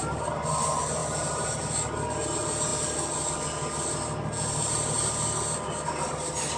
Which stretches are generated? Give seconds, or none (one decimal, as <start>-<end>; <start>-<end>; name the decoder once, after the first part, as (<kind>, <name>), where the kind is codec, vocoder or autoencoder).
1.0-1.9 (vocoder, BigVGAN v2); 2.7-6.1